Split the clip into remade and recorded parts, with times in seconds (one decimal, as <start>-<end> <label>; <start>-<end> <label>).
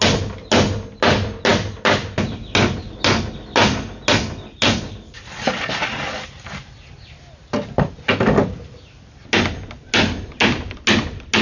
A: 0.0-11.4 recorded